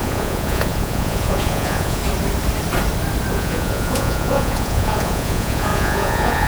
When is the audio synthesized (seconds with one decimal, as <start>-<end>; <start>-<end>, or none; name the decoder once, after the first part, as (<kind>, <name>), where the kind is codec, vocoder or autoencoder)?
0.0-2.0 (vocoder, Vocos); 3.3-6.5